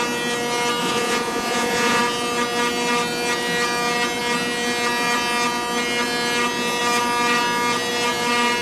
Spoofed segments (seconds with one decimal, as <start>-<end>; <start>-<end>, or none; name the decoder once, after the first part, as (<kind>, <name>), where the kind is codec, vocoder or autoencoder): 0.8-2.0 (vocoder, Vocos)